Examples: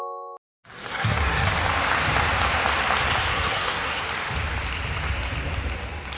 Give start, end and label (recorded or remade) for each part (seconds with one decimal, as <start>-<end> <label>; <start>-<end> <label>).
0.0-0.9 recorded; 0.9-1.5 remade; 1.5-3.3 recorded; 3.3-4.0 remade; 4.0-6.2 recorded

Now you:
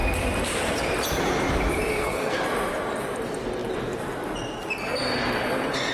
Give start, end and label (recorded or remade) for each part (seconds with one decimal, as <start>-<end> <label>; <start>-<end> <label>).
0.0-1.9 recorded; 1.9-2.4 remade; 2.4-5.9 recorded

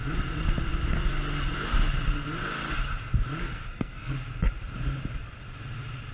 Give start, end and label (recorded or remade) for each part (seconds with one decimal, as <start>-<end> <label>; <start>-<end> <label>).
0.0-3.4 recorded; 3.4-4.1 remade; 4.1-6.1 recorded